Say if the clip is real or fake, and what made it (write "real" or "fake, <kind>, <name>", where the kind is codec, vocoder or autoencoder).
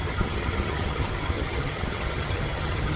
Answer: fake, vocoder, HiFi-GAN